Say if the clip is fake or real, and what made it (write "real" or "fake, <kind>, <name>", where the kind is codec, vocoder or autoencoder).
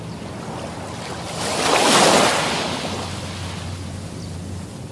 real